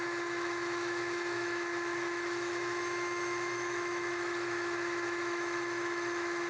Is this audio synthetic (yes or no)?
yes